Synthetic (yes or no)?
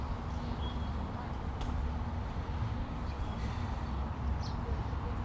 no